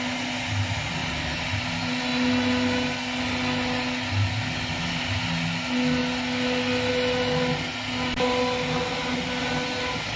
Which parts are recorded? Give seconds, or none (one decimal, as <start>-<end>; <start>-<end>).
0.0-10.2